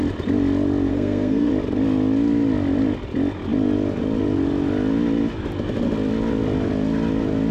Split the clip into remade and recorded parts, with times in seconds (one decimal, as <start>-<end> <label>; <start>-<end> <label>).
0.0-0.9 recorded; 0.9-1.5 remade; 1.5-7.5 recorded